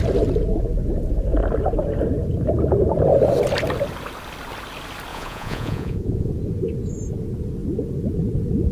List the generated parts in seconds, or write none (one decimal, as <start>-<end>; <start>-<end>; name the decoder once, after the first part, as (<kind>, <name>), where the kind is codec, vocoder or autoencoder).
5.1-6.3 (vocoder, Vocos)